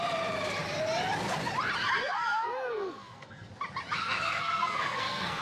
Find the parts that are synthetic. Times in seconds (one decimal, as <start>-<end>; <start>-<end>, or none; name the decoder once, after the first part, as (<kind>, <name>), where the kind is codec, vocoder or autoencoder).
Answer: 2.0-3.5 (codec, SNAC); 4.0-5.4